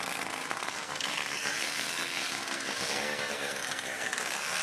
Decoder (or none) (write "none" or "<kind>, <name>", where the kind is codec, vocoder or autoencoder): codec, SNAC